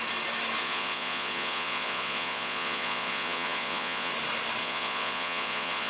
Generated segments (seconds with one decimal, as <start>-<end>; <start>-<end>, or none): 0.6-4.1; 4.6-5.9